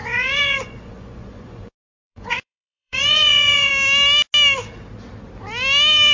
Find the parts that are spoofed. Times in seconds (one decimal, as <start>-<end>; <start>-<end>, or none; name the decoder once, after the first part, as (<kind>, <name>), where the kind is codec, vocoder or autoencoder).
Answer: 0.0-3.7 (vocoder, Vocos)